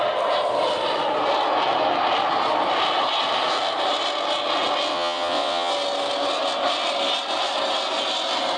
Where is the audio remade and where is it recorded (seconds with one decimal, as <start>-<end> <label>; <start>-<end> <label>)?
0.0-4.9 recorded; 4.9-5.7 remade; 5.7-8.6 recorded